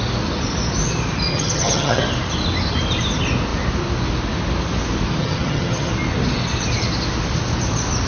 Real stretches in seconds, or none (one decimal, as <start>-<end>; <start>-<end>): 0.0-1.3; 2.0-5.2; 5.9-8.1

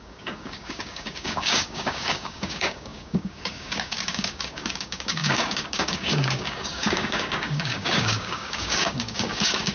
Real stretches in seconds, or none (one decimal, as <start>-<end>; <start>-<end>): none

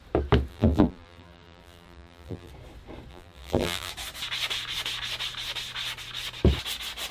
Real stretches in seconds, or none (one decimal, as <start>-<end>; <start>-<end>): 0.0-0.5; 2.5-3.1; 3.9-7.1

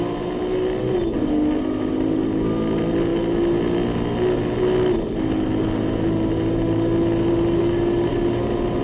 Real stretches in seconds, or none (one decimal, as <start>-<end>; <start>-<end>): 0.0-8.8

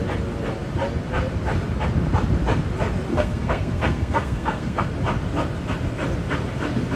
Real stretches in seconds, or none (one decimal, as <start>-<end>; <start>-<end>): 0.0-3.1; 4.9-7.0

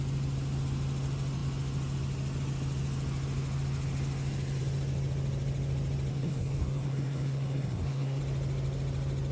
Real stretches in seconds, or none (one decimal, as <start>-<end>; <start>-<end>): 0.0-6.1; 8.2-9.3